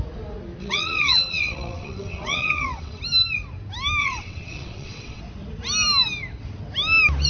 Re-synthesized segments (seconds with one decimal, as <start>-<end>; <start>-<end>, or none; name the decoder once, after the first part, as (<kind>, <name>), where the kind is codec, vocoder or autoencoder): 0.6-3.0 (vocoder, WaveNeXt); 4.0-5.2